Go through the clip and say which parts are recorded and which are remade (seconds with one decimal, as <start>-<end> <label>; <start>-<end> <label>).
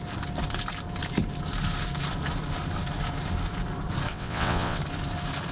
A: 0.0-4.1 recorded; 4.1-4.8 remade; 4.8-5.5 recorded